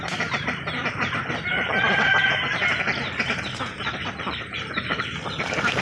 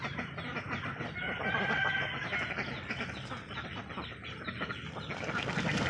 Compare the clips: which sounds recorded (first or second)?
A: second